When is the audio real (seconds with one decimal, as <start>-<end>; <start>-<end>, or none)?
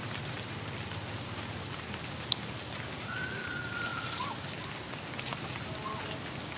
0.0-6.6